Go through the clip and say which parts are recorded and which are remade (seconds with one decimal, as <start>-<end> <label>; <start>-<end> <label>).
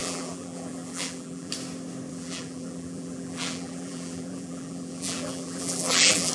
0.0-1.5 remade; 1.5-2.1 recorded; 2.1-6.3 remade